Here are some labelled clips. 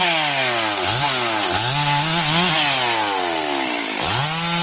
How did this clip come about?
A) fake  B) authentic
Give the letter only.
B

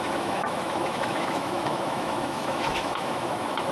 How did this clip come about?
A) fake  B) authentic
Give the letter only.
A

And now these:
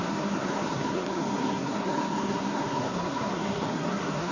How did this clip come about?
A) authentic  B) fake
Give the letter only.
B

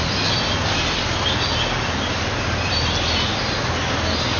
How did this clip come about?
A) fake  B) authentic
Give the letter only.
B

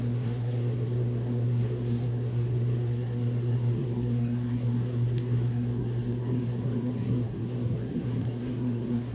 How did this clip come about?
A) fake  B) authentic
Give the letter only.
A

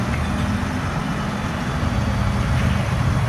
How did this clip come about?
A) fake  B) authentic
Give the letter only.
B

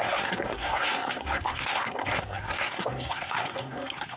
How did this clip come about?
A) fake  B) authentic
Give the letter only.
A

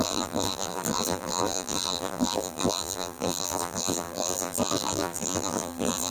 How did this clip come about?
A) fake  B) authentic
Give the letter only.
A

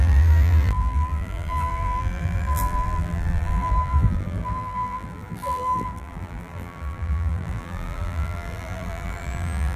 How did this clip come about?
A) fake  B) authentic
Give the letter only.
A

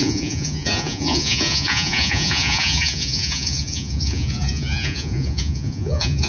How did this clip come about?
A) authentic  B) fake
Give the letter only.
B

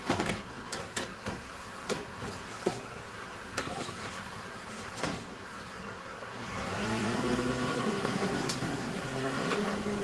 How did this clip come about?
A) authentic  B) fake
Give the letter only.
B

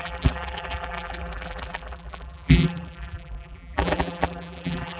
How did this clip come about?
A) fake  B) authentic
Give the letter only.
A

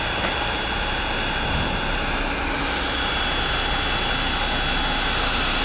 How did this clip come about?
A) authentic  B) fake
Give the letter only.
A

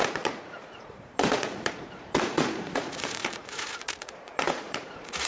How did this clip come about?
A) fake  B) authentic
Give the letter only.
A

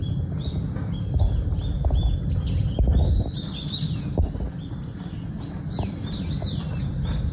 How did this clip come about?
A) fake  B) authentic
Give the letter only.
B